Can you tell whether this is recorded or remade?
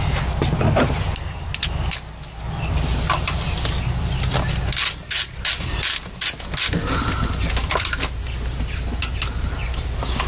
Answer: recorded